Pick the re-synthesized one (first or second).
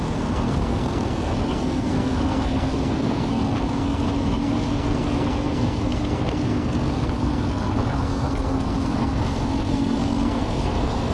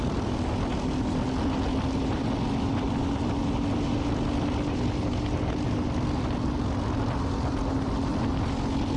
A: first